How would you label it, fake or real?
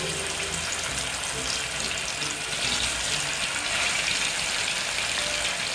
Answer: real